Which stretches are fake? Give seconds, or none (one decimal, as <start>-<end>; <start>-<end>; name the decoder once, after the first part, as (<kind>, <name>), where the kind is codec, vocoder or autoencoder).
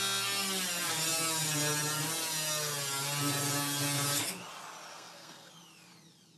4.9-5.5 (codec, SNAC)